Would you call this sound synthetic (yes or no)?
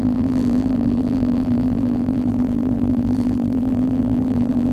yes